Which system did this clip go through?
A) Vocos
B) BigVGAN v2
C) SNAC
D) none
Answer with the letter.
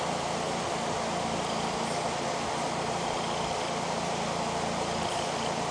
D